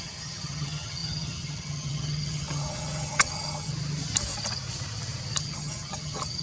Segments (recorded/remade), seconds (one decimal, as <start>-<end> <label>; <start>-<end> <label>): 0.0-3.7 remade; 3.7-5.4 recorded; 5.4-6.4 remade